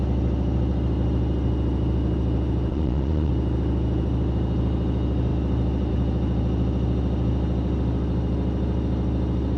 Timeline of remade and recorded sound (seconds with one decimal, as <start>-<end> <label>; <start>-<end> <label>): 0.0-2.7 recorded; 2.7-3.3 remade; 3.3-9.6 recorded

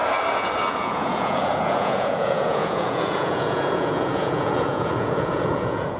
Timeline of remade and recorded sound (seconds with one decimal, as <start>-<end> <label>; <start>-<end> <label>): 0.0-0.7 recorded; 0.7-6.0 remade

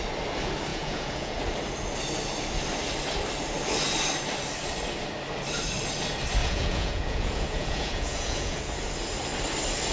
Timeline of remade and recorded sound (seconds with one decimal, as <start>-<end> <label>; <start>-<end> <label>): 0.0-0.7 recorded; 0.7-1.4 remade; 1.4-6.4 recorded; 6.4-8.6 remade; 8.6-9.9 recorded

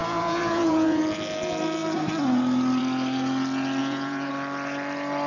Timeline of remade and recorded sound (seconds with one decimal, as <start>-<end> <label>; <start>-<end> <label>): 0.0-1.0 remade; 1.0-3.8 recorded; 3.8-4.3 remade; 4.3-5.3 recorded

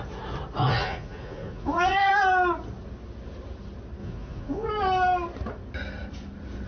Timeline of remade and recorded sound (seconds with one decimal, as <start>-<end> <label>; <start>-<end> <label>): 0.0-0.6 recorded; 0.6-2.1 remade; 2.1-4.0 recorded; 4.0-4.7 remade; 4.7-6.7 recorded

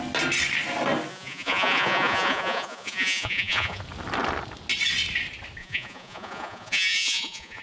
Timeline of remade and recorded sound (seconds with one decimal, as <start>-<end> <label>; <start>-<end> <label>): 0.0-1.1 recorded; 1.1-3.8 remade; 3.8-5.6 recorded; 5.6-7.6 remade